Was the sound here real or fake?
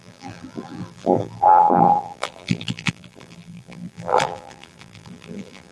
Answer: fake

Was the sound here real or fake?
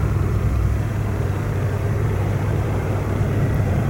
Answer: fake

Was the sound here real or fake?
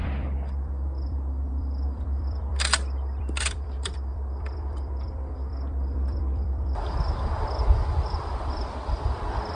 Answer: fake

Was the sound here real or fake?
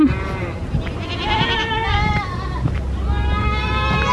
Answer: real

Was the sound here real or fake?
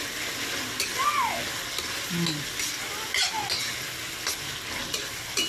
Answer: real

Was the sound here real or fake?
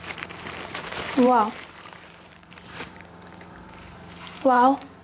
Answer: fake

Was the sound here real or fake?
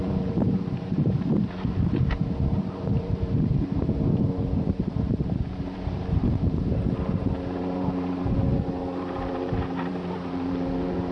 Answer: fake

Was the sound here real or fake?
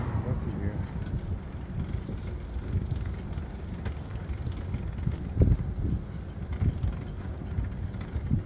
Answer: real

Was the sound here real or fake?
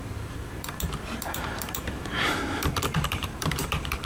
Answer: fake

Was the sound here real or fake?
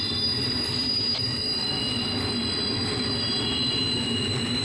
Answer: fake